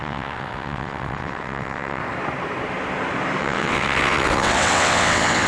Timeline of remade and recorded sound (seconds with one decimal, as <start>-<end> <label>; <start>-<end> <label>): 0.0-2.0 remade; 2.0-3.4 recorded; 3.4-5.5 remade